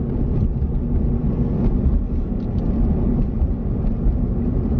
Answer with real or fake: real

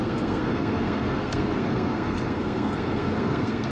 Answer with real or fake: fake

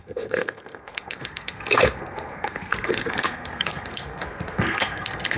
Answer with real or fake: fake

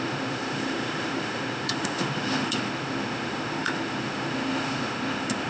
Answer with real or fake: fake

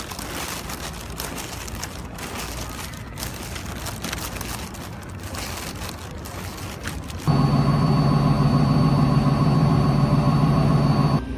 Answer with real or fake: real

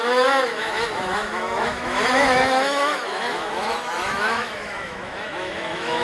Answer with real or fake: fake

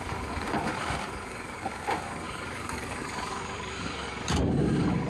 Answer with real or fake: fake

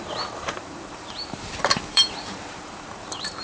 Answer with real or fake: fake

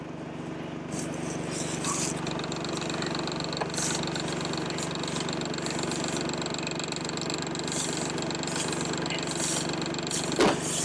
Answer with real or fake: real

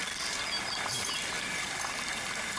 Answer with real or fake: real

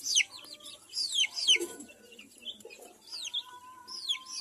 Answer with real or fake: real